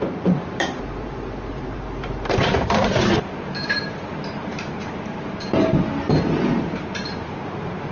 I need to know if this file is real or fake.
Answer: fake